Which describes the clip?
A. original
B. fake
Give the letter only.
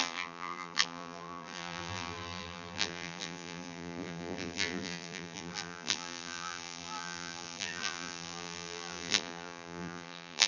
B